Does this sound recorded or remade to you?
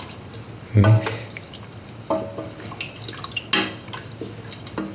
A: recorded